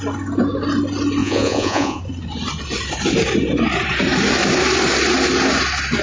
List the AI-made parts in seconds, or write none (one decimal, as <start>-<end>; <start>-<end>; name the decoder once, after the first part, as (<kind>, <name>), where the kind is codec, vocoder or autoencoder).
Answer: 1.2-2.0 (vocoder, Vocos)